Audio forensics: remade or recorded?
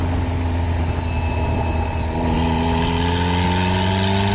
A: recorded